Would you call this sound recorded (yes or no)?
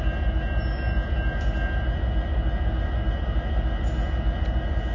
yes